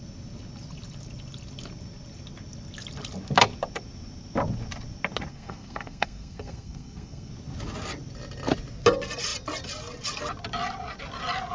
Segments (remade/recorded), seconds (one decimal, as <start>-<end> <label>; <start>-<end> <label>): 0.0-5.3 recorded; 5.3-7.3 remade; 7.3-11.5 recorded